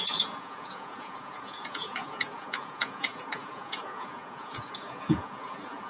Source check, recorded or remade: remade